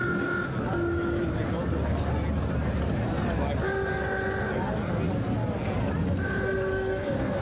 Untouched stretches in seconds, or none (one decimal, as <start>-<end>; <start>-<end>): 0.0-6.7